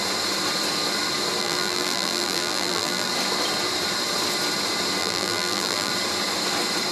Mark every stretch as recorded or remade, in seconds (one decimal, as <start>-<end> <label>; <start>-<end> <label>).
0.0-1.4 recorded; 1.4-3.1 remade; 3.1-5.0 recorded; 5.0-5.9 remade; 5.9-6.9 recorded